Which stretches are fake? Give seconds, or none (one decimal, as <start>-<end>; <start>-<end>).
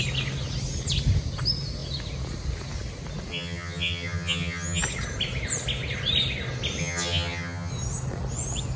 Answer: 3.3-4.8; 6.8-7.7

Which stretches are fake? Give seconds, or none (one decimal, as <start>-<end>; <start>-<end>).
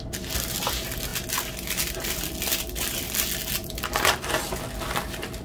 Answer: none